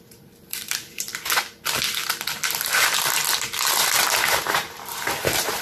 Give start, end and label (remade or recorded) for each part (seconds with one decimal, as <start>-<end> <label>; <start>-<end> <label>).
0.0-1.1 remade; 1.1-4.3 recorded; 4.3-5.6 remade